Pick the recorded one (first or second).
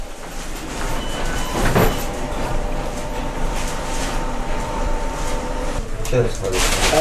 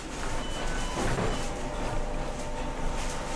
second